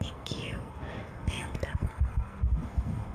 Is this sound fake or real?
fake